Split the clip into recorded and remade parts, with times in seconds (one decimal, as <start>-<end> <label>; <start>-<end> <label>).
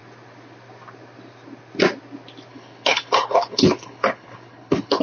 0.0-2.5 recorded; 2.5-5.0 remade